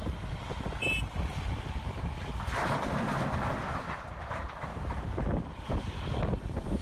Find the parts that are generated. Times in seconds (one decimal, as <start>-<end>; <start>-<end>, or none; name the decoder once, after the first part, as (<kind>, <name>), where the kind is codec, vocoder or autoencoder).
none